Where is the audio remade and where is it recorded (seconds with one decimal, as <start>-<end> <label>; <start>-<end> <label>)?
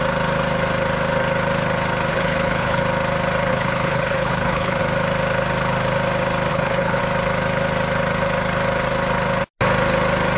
0.0-2.1 recorded; 2.1-2.8 remade; 2.8-3.5 recorded; 3.5-4.8 remade; 4.8-6.5 recorded; 6.5-7.0 remade; 7.0-10.4 recorded